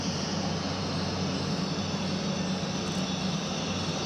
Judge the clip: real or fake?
real